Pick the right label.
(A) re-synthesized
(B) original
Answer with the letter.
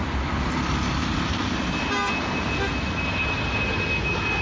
B